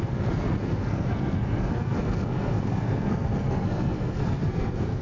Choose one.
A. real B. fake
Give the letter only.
B